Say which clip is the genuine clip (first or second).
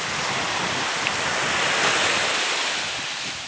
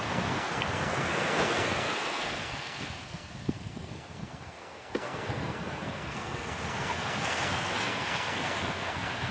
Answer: first